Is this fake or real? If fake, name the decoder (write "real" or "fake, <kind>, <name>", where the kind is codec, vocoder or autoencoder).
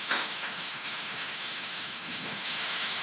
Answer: fake, autoencoder, DAC-VAE